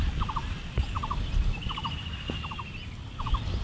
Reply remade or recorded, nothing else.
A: recorded